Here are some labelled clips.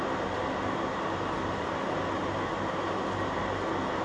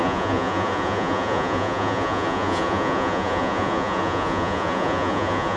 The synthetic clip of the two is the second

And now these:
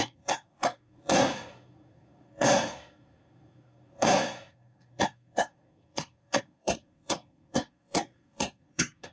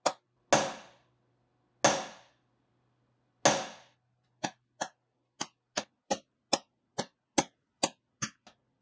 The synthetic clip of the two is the first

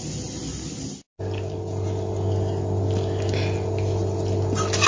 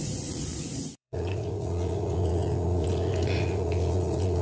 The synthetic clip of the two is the second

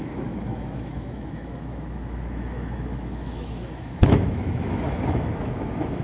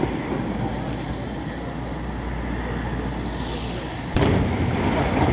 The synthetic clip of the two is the first